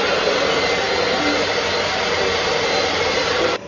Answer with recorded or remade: remade